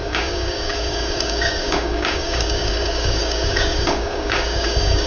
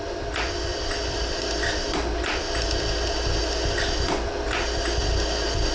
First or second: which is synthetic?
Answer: first